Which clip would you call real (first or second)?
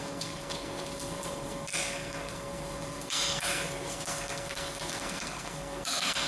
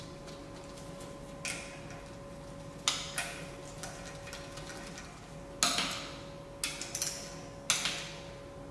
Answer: second